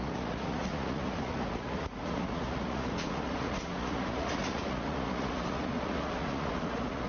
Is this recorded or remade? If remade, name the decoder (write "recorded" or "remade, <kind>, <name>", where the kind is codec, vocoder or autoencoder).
remade, vocoder, Vocos